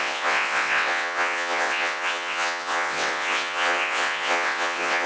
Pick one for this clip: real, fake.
fake